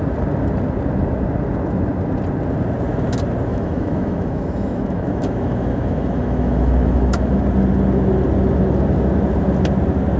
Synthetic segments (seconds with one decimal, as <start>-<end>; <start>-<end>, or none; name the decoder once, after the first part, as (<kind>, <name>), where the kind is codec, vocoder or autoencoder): 3.5-7.4 (autoencoder, DAC-VAE)